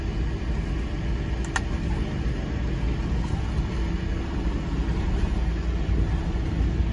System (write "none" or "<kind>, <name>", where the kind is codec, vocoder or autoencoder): none